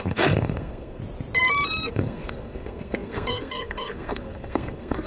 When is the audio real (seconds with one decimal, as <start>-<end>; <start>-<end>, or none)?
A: 1.0-1.9